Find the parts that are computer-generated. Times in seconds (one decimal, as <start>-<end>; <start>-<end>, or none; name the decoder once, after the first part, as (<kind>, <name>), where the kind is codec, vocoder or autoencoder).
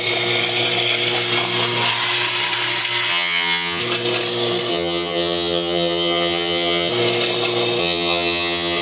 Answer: 3.1-3.8 (vocoder, HiFi-GAN); 4.7-6.9; 7.8-8.8